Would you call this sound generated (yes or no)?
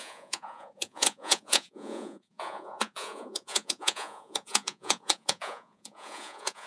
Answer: yes